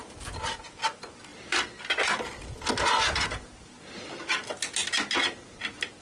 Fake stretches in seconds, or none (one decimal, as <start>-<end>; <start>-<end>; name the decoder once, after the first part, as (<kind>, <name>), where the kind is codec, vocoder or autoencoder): none